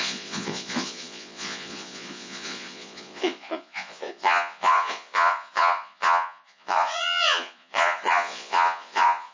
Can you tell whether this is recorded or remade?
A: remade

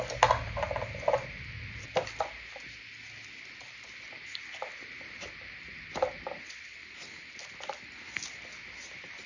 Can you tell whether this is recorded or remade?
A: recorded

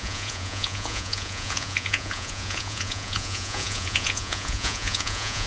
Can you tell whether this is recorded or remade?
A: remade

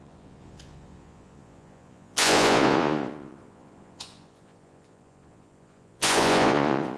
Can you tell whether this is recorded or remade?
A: remade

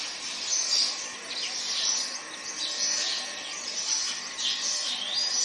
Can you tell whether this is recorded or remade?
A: recorded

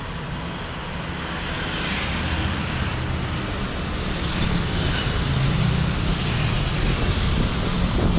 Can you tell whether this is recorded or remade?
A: recorded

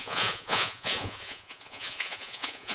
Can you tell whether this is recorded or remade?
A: remade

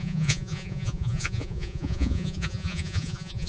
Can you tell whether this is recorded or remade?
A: remade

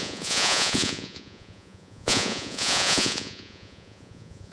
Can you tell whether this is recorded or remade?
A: remade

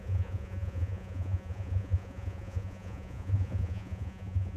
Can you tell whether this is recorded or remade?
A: remade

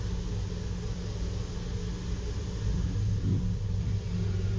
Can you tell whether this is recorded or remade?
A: recorded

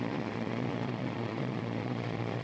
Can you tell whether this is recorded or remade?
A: remade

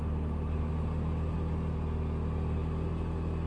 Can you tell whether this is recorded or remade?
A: recorded